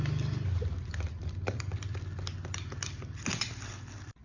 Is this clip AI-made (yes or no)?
no